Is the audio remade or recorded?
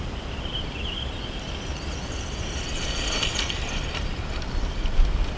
recorded